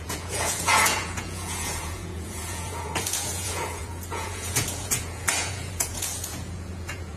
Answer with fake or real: fake